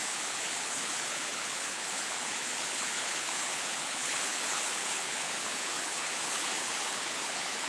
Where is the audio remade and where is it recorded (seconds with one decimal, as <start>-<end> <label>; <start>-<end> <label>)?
0.0-7.7 remade